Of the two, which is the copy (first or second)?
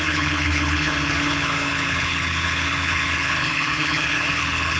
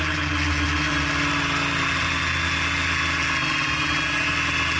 first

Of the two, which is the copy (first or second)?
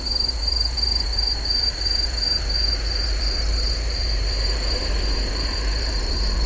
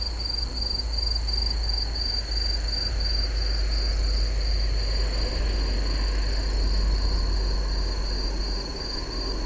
first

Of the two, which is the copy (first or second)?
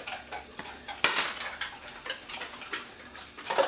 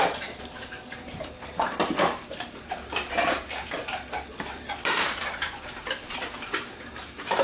second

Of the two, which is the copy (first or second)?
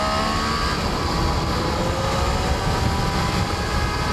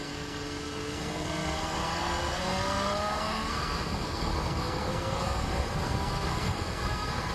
second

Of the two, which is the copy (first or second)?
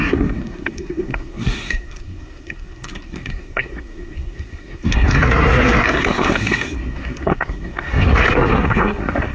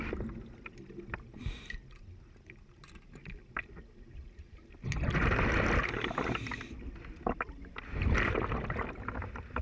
first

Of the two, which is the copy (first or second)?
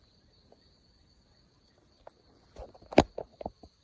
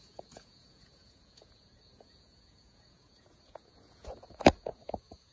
second